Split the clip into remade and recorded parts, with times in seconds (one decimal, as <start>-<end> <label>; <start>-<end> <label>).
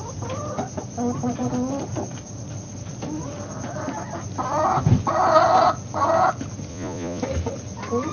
0.0-6.7 recorded; 6.7-7.2 remade; 7.2-8.1 recorded